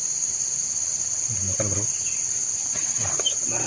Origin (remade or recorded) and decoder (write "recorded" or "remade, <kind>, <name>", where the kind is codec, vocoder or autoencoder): recorded